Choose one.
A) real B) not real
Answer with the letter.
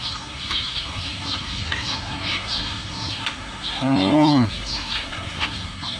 B